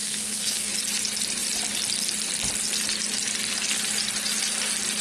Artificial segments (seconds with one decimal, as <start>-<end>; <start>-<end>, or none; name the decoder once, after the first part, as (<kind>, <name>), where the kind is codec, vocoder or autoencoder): 0.0-0.7 (codec, SNAC)